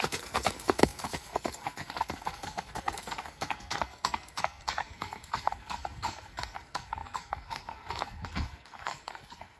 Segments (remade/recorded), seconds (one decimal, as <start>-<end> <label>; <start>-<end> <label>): 0.0-9.6 remade